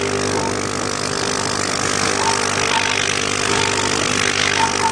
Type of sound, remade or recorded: recorded